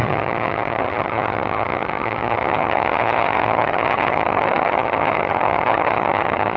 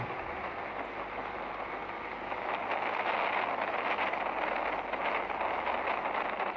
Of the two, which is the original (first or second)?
second